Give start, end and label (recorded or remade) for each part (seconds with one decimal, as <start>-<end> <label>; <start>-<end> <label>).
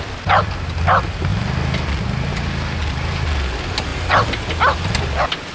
0.0-5.5 recorded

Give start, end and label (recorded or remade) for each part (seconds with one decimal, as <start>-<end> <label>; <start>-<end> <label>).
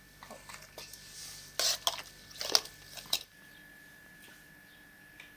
0.0-5.4 recorded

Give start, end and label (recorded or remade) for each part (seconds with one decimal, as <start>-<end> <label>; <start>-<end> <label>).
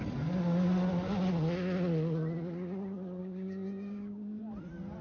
0.0-3.2 recorded; 3.2-4.4 remade; 4.4-5.0 recorded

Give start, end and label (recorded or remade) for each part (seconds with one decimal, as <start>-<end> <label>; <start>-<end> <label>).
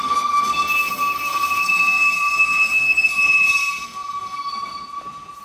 0.0-3.2 remade; 3.2-3.6 recorded; 3.6-4.5 remade; 4.5-5.4 recorded